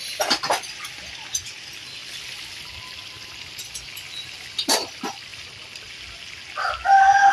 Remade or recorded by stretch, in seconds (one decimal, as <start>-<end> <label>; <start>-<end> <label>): 0.0-7.3 recorded